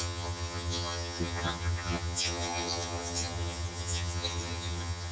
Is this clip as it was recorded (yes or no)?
no